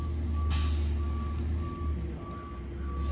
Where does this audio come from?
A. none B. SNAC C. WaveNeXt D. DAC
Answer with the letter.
A